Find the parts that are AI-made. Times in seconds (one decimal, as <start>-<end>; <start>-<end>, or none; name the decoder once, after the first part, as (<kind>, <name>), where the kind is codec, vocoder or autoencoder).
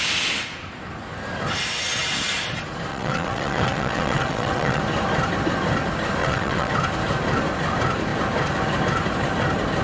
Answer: 2.9-4.8 (vocoder, WaveNeXt); 6.2-6.7